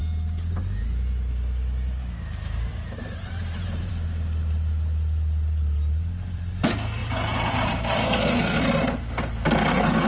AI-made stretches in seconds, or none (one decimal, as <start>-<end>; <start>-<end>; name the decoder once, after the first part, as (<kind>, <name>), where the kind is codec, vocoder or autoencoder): 2.0-3.9 (vocoder, BigVGAN v2); 7.0-8.0